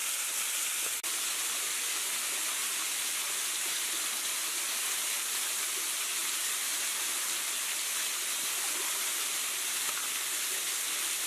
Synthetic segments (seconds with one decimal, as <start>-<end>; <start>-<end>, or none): none